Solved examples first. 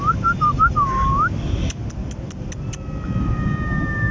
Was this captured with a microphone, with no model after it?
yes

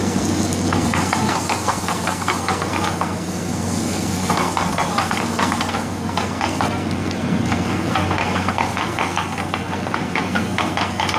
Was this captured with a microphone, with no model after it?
no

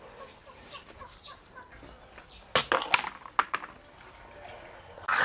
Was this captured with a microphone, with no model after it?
yes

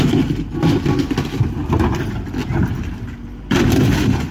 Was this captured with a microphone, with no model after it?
yes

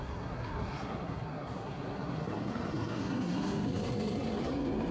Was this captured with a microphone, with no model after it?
no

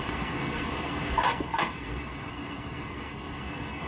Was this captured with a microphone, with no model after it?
no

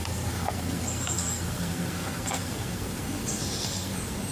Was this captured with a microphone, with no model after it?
no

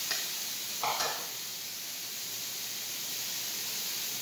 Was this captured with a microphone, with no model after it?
yes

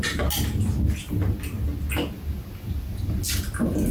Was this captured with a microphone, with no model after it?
yes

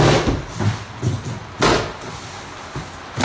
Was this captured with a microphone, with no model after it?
yes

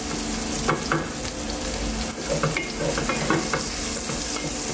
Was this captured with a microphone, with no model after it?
yes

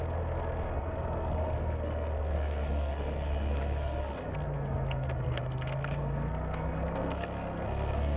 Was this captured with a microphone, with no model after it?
no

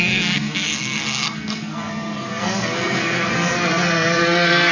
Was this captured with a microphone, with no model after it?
no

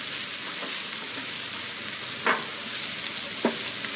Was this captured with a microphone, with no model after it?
yes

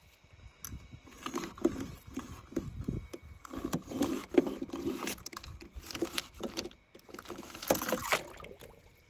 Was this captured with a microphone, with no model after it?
yes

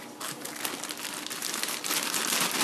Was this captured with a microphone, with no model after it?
yes